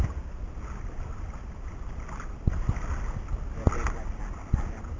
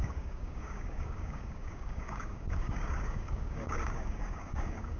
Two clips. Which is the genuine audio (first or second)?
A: first